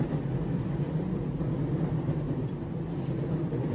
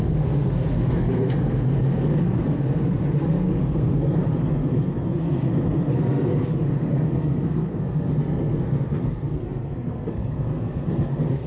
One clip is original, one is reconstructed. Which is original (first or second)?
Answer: first